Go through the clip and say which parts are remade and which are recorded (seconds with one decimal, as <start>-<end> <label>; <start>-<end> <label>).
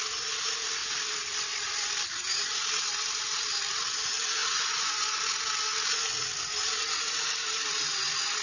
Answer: 0.0-4.4 recorded; 4.4-5.2 remade; 5.2-8.4 recorded